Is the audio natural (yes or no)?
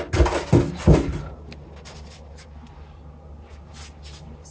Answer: yes